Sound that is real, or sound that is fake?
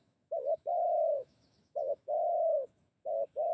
fake